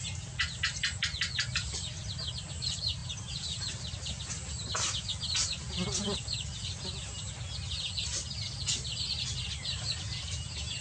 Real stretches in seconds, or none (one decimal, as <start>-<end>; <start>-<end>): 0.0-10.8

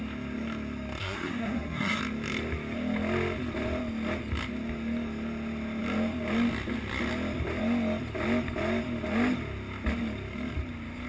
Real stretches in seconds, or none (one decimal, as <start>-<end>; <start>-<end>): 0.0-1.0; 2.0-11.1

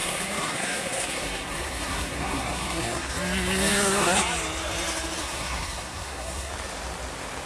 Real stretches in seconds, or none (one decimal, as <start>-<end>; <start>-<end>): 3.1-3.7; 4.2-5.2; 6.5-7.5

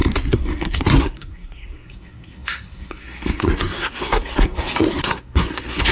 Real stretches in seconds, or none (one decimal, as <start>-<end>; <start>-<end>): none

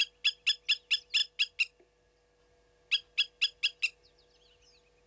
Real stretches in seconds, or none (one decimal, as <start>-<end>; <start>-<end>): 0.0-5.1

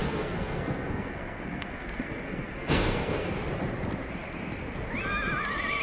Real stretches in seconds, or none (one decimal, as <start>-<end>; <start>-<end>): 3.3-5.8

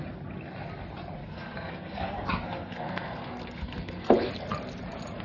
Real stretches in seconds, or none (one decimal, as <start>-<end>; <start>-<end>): 0.0-1.2; 4.3-5.2